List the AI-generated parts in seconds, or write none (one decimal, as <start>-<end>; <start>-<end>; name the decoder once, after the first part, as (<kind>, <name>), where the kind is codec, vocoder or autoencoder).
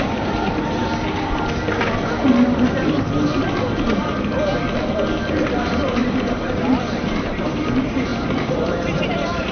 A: 0.0-0.8 (vocoder, BigVGAN v2); 5.6-9.5